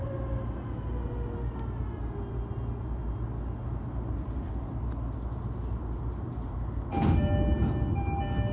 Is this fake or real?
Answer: real